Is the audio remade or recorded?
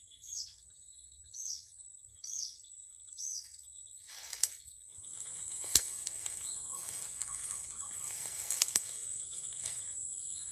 remade